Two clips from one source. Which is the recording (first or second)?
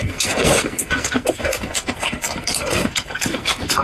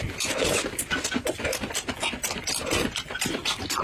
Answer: second